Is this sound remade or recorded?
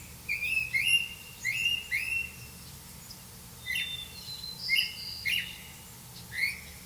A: recorded